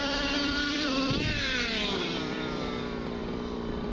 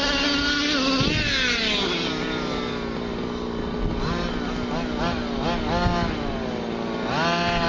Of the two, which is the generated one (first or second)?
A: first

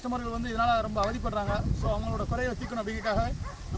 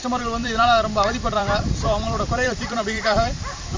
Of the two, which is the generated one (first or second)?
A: second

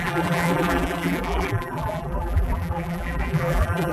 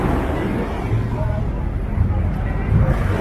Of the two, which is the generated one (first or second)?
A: first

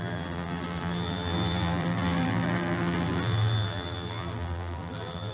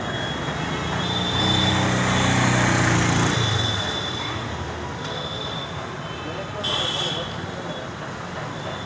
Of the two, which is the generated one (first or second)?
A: first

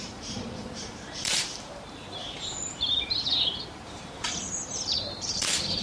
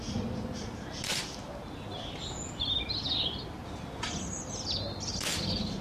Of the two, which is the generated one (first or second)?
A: first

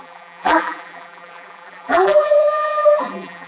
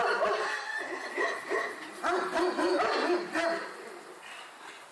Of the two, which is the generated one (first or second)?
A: first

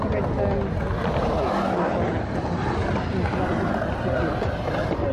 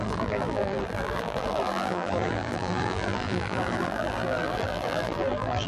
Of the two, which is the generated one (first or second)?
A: second